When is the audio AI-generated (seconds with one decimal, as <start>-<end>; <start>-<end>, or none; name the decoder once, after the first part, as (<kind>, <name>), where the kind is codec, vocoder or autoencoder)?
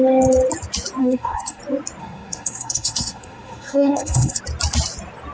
1.0-1.6 (codec, SNAC); 2.0-4.4